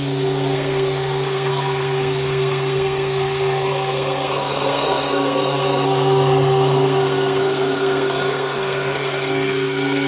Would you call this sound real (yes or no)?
no